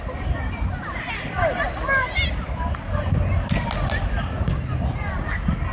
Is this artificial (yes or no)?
no